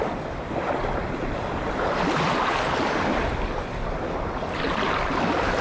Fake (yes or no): no